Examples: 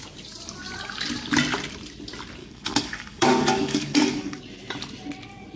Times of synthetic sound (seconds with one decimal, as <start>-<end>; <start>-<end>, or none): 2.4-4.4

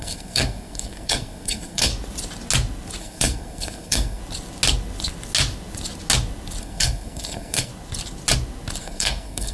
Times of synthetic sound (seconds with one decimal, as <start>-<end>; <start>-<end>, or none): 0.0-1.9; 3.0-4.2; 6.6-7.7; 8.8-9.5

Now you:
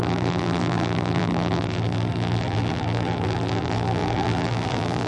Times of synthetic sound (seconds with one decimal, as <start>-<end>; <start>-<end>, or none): 0.0-5.1

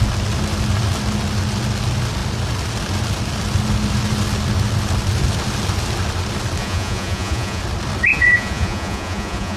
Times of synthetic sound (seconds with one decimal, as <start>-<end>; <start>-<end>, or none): 6.6-7.6; 8.1-9.6

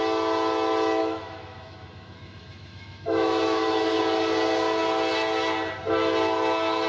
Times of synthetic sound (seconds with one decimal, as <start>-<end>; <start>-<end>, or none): 1.0-4.0